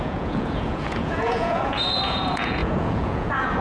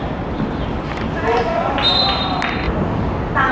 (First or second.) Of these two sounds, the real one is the second